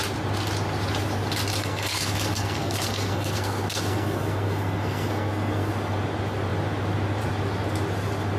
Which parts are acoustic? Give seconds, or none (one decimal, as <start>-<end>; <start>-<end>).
0.0-1.6; 5.7-8.4